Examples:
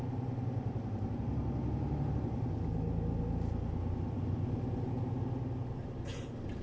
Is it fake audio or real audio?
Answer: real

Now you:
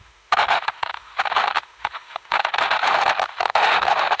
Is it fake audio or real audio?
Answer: fake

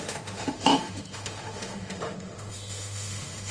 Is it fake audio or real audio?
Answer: fake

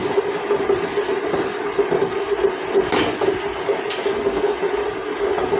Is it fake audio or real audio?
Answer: real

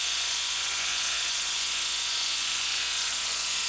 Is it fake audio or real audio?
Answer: fake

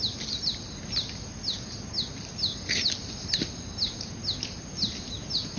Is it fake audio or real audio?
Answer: real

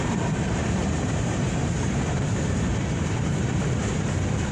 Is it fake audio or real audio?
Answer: fake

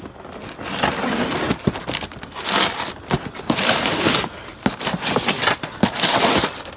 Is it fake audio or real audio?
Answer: real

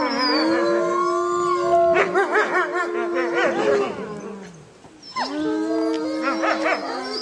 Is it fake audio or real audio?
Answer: real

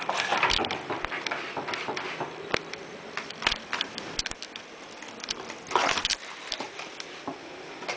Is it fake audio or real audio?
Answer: fake